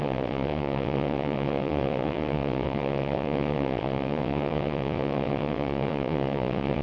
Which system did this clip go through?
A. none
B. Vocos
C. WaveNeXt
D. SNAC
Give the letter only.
C